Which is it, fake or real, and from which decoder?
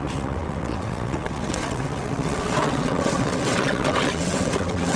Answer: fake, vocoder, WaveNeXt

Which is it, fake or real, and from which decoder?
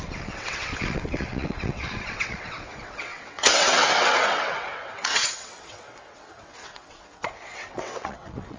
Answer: fake, vocoder, WaveNeXt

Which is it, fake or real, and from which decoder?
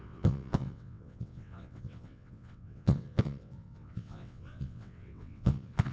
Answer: fake, vocoder, WaveNeXt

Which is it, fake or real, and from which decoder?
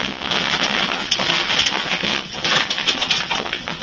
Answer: fake, vocoder, WaveNeXt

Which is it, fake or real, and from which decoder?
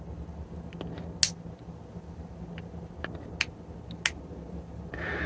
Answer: real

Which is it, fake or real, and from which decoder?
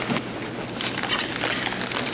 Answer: real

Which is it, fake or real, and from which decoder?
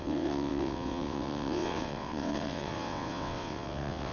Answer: fake, vocoder, WaveNeXt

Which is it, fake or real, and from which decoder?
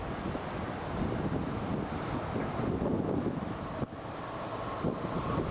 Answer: real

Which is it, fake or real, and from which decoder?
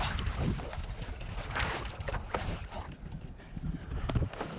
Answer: real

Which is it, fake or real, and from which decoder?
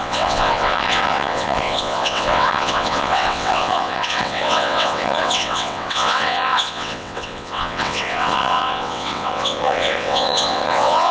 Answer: fake, vocoder, WaveNeXt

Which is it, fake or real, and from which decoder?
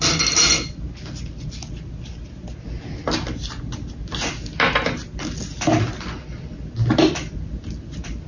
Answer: real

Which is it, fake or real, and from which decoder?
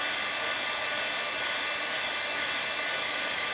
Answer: real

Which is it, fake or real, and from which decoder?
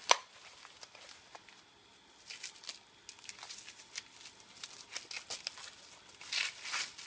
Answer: real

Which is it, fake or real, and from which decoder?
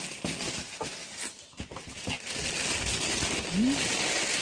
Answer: real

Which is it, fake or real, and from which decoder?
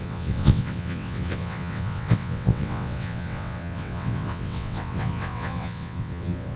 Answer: fake, vocoder, WaveNeXt